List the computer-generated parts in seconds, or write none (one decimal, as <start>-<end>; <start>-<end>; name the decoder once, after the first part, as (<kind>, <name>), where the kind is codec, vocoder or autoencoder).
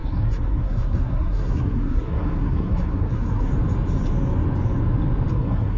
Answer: 0.0-3.5 (codec, SNAC); 5.3-5.8